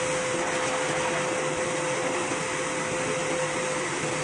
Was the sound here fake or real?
real